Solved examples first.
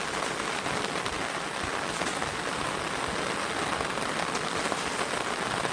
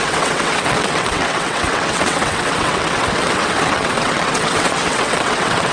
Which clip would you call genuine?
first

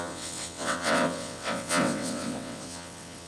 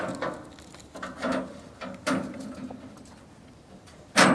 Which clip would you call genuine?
second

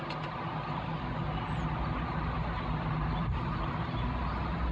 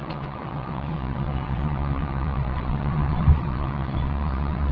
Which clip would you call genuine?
first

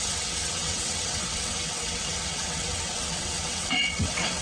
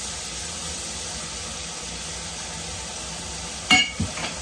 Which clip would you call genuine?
second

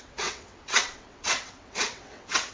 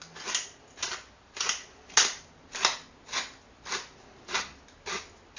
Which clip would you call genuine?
second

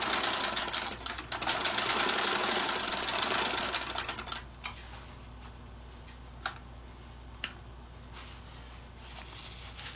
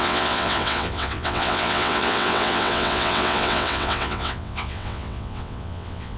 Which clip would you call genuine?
first